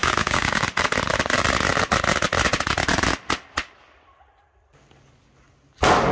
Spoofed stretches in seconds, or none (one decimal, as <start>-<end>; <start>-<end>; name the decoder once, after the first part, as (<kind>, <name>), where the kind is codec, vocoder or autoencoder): 0.0-0.6 (codec, DAC)